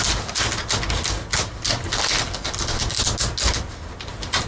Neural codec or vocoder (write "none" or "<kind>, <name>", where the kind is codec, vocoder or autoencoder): none